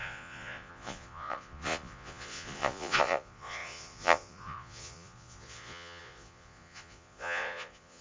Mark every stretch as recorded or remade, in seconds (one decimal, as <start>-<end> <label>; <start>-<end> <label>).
0.0-8.0 remade